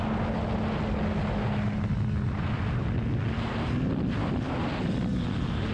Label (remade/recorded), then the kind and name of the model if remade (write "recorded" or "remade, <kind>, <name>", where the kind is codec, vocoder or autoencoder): recorded